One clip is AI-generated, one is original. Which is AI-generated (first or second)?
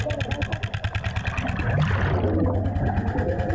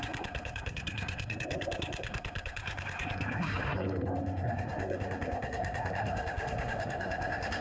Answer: second